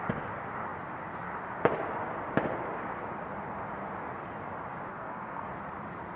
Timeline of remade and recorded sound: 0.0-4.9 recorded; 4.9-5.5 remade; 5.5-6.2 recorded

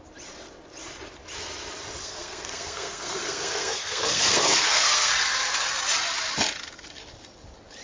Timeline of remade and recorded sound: 0.0-2.0 recorded; 2.0-5.1 remade; 5.1-7.8 recorded

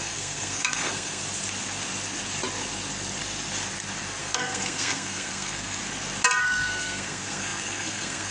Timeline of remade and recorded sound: 0.0-1.2 remade; 1.2-4.2 recorded; 4.2-5.8 remade; 5.8-6.4 recorded; 6.4-8.3 remade

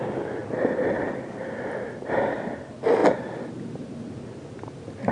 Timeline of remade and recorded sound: 0.0-5.1 recorded

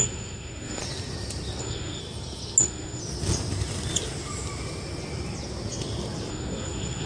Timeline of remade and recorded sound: 0.0-0.8 remade; 0.8-1.6 recorded; 1.6-2.0 remade; 2.0-2.6 recorded; 2.6-3.0 remade; 3.0-6.3 recorded; 6.3-7.1 remade

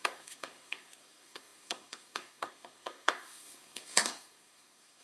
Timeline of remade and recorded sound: 0.0-5.0 remade

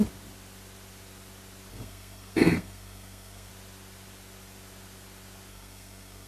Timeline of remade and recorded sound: 0.0-1.7 recorded; 1.7-3.5 remade; 3.5-5.5 recorded; 5.5-6.3 remade

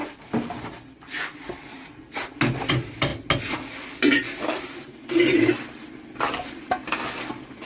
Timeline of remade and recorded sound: 0.0-7.7 recorded